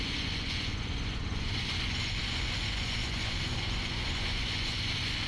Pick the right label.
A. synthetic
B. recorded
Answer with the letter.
A